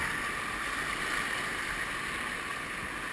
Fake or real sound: real